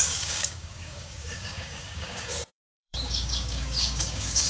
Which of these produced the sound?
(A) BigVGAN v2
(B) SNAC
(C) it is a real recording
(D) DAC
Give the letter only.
D